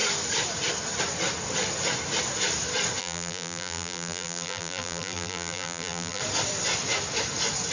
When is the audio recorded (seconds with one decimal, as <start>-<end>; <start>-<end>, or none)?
0.0-3.0; 6.2-7.7